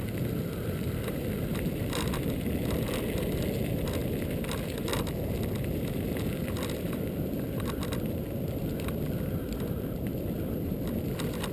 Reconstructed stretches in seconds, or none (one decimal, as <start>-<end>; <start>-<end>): 0.0-4.0; 6.5-8.6; 9.5-11.5